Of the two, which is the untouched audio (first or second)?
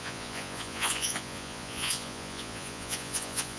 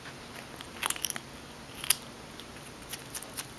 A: second